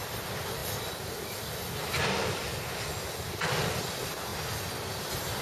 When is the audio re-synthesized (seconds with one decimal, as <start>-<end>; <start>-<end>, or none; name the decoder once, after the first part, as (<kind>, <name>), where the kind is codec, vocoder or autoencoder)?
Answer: none

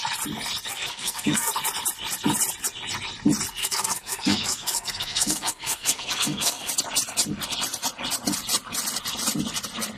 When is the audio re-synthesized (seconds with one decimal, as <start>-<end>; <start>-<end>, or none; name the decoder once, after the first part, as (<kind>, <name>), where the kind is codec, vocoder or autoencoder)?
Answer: 0.7-1.5 (codec, SNAC); 3.6-6.7